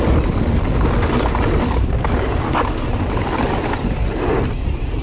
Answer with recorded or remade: recorded